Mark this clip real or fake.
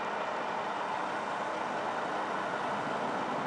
real